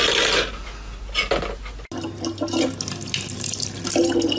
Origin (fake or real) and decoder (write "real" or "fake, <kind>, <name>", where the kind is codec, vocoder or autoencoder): real